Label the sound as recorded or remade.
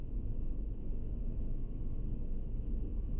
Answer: remade